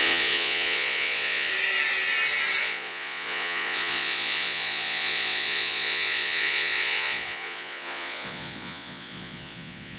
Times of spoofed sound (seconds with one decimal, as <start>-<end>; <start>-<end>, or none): 0.0-1.5; 2.6-10.0